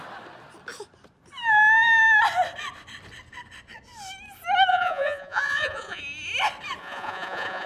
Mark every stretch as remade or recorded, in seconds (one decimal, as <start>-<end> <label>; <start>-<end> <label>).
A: 0.0-4.7 recorded; 4.7-6.0 remade; 6.0-6.8 recorded; 6.8-7.7 remade